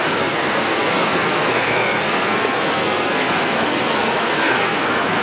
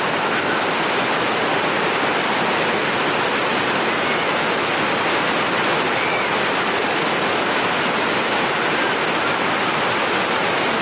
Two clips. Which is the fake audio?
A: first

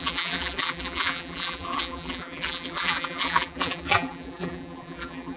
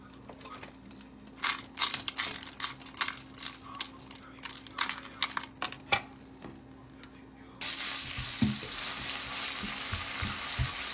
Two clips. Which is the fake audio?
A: first